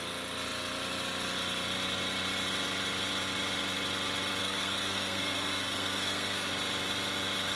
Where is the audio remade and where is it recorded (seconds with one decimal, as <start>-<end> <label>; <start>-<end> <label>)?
0.0-4.4 recorded; 4.4-6.5 remade; 6.5-7.6 recorded